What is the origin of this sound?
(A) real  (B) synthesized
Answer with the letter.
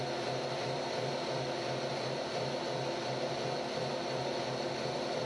A